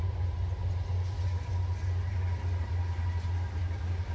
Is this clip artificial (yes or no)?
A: no